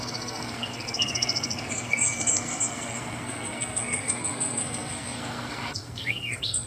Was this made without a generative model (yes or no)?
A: no